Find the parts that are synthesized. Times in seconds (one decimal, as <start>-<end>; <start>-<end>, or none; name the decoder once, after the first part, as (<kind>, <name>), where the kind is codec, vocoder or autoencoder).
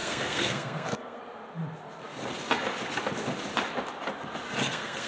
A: 0.0-1.2 (codec, SNAC); 4.6-5.1